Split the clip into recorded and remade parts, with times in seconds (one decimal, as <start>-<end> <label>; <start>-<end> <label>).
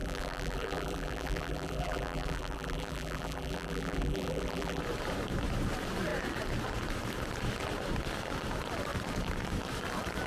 0.0-4.8 remade; 4.8-10.3 recorded